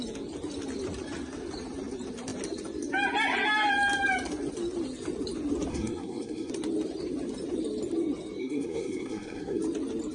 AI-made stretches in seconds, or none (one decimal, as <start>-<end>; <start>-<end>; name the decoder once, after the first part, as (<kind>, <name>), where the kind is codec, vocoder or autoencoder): 5.7-6.5 (codec, SNAC); 8.4-9.6